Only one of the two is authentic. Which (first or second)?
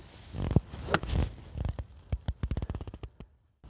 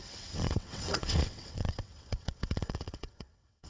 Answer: first